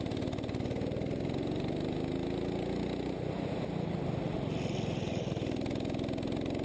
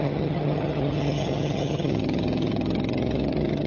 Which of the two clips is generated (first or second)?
second